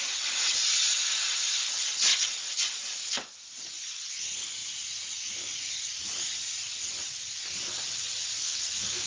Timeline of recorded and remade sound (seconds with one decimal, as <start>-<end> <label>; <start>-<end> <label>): 0.0-8.4 recorded; 8.4-9.1 remade